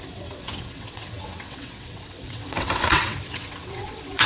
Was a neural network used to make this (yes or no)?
yes